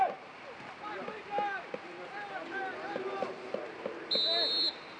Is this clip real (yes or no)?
yes